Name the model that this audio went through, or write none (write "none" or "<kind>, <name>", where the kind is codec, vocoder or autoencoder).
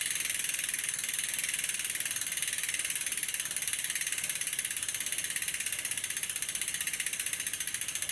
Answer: none